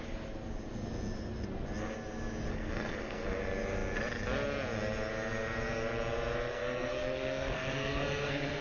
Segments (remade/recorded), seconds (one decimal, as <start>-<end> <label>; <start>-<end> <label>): 0.0-2.5 recorded; 2.5-3.4 remade; 3.4-6.5 recorded; 6.5-8.6 remade